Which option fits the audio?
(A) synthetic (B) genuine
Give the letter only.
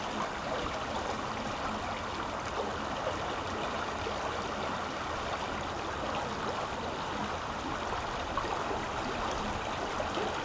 B